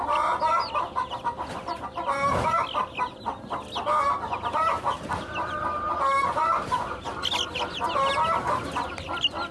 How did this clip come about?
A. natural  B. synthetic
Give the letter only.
A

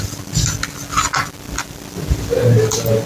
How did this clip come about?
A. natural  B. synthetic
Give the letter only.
A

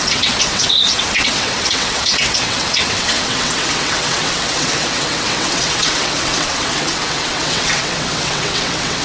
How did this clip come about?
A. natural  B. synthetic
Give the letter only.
B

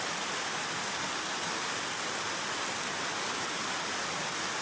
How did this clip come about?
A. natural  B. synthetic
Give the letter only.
A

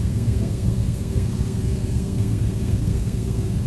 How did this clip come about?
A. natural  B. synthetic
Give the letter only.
B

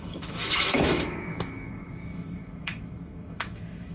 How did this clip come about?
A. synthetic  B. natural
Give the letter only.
A